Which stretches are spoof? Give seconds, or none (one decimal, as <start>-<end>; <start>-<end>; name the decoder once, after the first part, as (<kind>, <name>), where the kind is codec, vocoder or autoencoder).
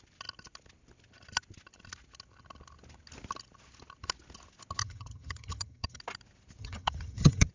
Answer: 4.8-6.0 (vocoder, HiFi-GAN); 6.6-7.5